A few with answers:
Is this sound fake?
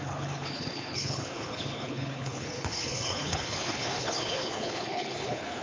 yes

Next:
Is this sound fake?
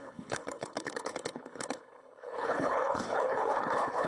yes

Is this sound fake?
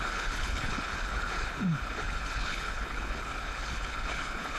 yes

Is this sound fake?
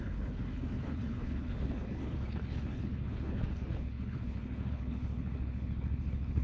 yes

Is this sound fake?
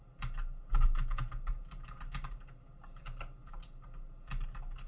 no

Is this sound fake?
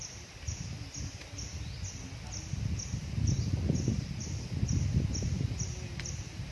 no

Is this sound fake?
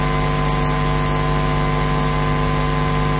no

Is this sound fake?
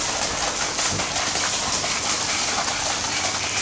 no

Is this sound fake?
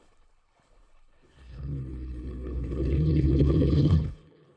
yes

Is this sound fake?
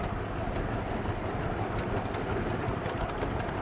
no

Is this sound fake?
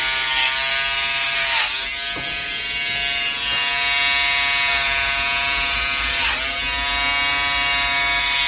no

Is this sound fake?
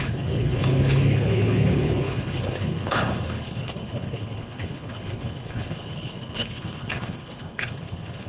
yes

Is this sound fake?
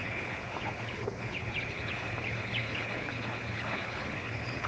yes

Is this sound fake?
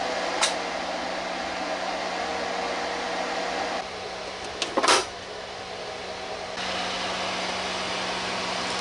no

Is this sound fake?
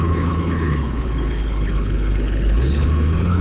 yes